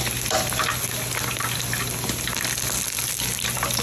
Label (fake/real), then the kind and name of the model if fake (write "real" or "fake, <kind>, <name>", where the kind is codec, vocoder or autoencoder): real